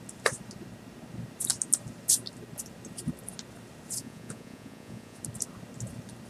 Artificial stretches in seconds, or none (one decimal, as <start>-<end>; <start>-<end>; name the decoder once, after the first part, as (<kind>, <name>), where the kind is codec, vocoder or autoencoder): 4.0-5.2 (vocoder, Vocos)